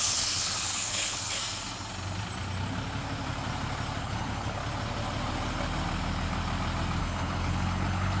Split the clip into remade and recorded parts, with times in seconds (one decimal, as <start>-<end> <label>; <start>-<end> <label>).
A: 0.0-1.4 remade; 1.4-4.0 recorded; 4.0-4.6 remade; 4.6-7.0 recorded; 7.0-8.2 remade